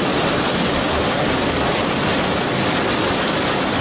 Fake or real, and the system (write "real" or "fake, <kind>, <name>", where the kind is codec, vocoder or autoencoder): real